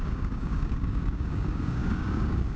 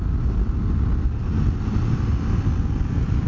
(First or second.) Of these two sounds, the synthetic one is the first